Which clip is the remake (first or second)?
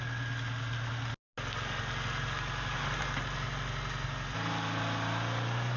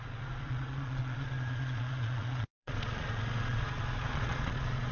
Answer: second